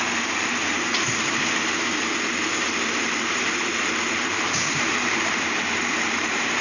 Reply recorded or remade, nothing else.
remade